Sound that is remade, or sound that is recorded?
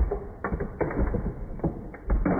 recorded